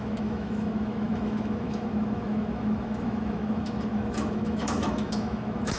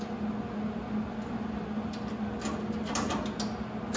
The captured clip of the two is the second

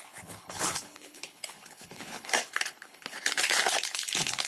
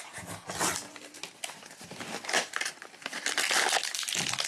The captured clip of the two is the second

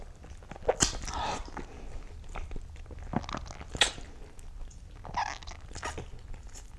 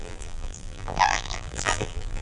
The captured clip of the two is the first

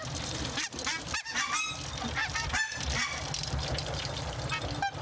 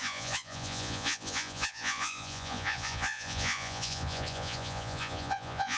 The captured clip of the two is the first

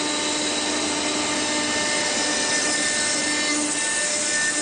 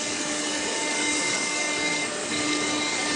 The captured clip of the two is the first